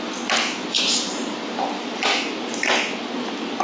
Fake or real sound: real